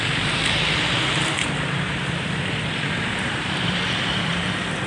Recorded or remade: remade